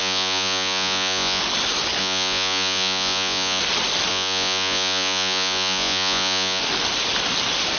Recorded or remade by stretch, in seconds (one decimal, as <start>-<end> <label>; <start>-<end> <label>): 0.0-1.4 remade; 1.4-2.0 recorded; 2.0-3.6 remade; 3.6-4.1 recorded; 4.1-6.6 remade; 6.6-7.8 recorded